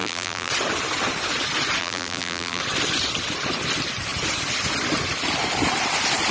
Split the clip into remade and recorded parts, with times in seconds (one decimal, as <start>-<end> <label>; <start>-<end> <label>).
0.0-0.5 remade; 0.5-1.8 recorded; 1.8-2.6 remade; 2.6-6.3 recorded